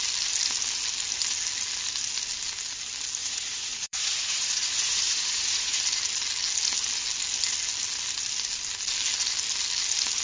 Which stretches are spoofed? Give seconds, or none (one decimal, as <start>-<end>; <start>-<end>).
3.2-5.8